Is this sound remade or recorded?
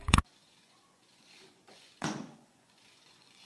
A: remade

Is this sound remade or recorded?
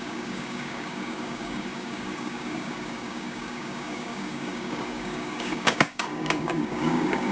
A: remade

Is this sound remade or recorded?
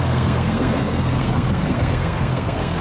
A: remade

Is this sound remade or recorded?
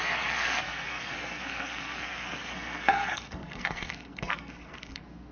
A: remade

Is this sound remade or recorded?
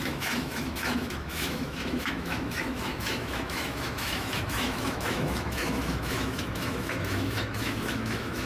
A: remade